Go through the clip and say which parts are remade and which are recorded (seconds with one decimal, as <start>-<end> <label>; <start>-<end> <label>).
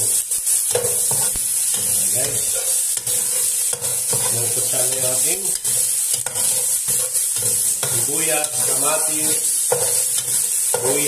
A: 0.0-3.9 recorded; 3.9-4.9 remade; 4.9-11.1 recorded